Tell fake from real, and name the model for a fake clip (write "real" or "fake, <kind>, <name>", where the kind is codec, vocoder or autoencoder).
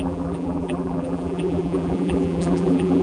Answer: fake, vocoder, BigVGAN v2